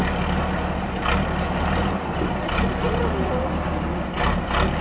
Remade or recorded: recorded